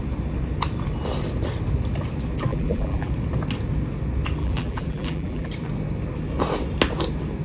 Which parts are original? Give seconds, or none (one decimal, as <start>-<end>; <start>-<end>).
0.0-2.5; 3.1-4.4; 5.5-7.4